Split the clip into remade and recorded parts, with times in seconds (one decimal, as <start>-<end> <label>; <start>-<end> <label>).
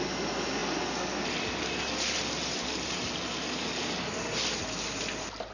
0.0-5.5 recorded